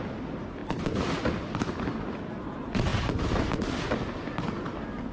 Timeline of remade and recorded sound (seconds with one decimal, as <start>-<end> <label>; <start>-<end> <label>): 0.0-0.6 recorded; 0.6-1.4 remade; 1.4-5.1 recorded